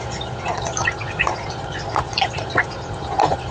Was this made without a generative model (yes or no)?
no